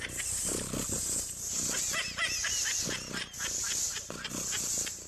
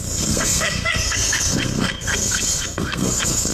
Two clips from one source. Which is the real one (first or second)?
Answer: first